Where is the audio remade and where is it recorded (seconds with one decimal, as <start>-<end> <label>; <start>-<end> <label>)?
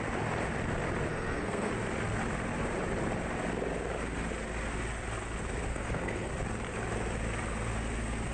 0.0-1.1 recorded; 1.1-1.7 remade; 1.7-5.7 recorded; 5.7-6.3 remade; 6.3-8.3 recorded